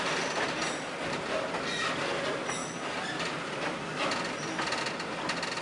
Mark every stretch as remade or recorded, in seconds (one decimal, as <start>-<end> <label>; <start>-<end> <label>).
0.0-2.6 recorded; 2.6-3.8 remade; 3.8-5.6 recorded